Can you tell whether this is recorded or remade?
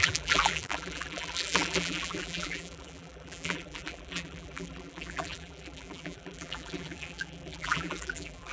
remade